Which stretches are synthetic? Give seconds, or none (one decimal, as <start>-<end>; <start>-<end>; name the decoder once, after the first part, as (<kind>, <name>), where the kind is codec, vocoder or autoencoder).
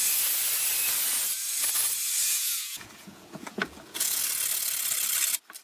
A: 2.2-4.2 (vocoder, Vocos)